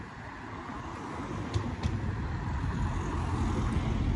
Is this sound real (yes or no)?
yes